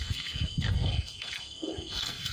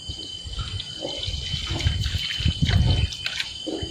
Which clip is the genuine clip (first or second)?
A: second